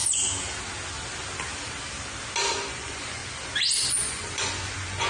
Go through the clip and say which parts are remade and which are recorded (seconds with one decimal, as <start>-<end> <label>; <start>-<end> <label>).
0.0-2.7 recorded; 2.7-3.2 remade; 3.2-3.9 recorded; 3.9-5.1 remade